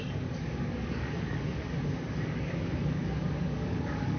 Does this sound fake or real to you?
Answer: fake